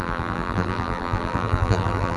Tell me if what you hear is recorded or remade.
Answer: remade